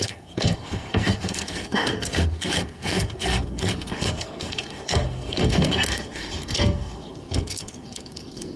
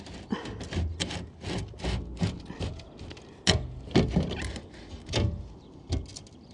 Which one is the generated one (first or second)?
first